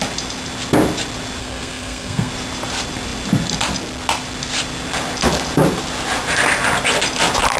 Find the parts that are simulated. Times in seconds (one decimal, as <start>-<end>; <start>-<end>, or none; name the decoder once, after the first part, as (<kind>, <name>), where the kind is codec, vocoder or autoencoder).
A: 1.4-2.3 (codec, SNAC)

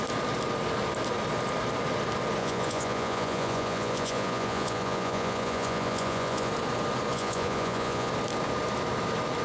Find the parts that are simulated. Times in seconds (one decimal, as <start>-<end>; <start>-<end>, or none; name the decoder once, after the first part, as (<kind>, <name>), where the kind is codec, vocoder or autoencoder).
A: 2.4-6.5 (vocoder, Vocos); 7.1-8.1

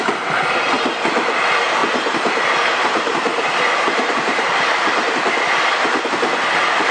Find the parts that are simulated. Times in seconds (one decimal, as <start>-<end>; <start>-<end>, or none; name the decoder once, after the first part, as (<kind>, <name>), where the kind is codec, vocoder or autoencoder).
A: none

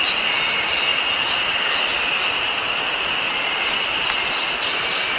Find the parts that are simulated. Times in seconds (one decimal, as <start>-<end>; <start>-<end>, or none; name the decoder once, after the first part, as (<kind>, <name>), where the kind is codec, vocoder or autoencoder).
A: none

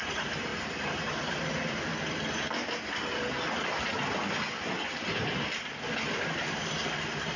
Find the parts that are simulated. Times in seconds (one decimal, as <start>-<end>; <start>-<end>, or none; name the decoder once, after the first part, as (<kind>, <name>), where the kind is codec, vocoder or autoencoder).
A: 0.0-1.9 (vocoder, BigVGAN v2); 4.7-5.4

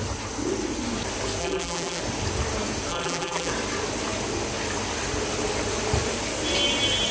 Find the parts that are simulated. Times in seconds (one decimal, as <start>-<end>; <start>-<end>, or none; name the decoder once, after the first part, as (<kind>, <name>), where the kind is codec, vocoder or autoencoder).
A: 1.4-2.0 (vocoder, BigVGAN v2); 2.9-3.5